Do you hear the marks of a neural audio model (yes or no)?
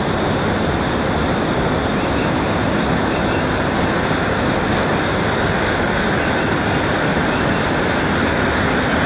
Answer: no